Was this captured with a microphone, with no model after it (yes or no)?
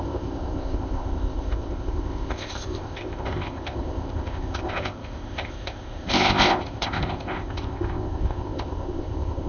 no